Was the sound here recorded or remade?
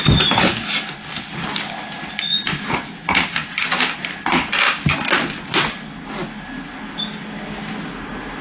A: recorded